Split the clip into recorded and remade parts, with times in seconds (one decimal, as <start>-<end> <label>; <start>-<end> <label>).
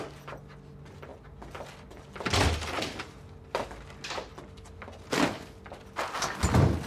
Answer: 0.0-6.9 recorded